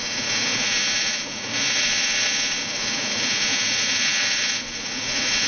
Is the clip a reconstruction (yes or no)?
yes